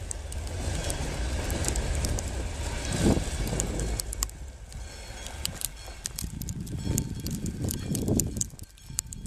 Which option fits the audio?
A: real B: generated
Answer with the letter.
A